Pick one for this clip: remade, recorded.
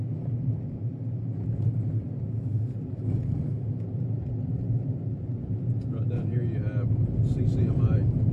recorded